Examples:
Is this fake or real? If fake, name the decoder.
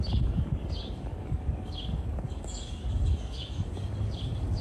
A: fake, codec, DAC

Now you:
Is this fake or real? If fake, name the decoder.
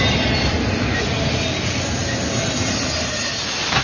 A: real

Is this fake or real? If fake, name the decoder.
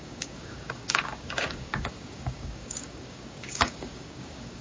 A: fake, codec, DAC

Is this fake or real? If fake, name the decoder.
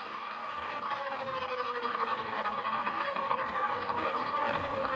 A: fake, codec, DAC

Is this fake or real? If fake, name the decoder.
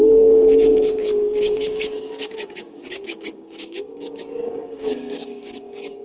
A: fake, codec, DAC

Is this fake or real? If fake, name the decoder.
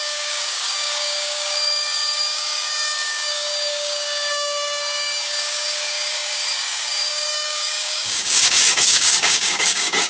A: fake, codec, DAC